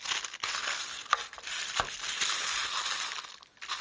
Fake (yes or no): no